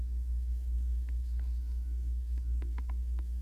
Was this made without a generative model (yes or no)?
no